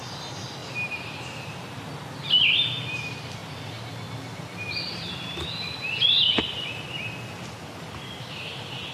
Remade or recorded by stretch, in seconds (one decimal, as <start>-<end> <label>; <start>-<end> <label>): 0.0-8.9 recorded